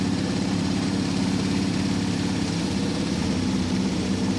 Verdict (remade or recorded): remade